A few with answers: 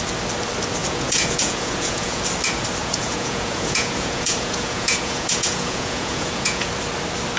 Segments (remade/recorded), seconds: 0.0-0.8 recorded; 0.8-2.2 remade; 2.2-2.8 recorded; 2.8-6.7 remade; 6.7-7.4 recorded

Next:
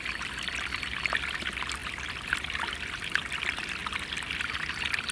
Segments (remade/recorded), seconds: 0.0-1.8 recorded; 1.8-3.4 remade; 3.4-3.8 recorded; 3.8-4.5 remade; 4.5-5.1 recorded

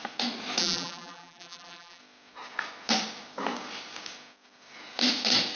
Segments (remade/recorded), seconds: 0.0-0.6 recorded; 0.6-2.0 remade; 2.0-5.6 recorded

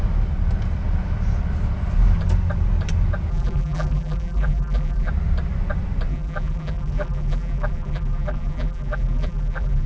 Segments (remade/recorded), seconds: 0.0-3.3 recorded; 3.3-5.1 remade; 5.1-6.1 recorded; 6.1-9.9 remade

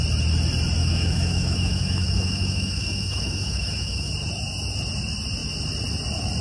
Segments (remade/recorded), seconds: 0.0-0.8 recorded; 0.8-4.1 remade; 4.1-6.4 recorded